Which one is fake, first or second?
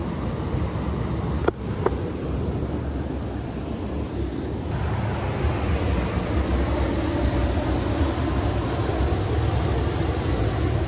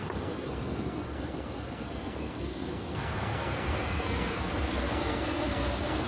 second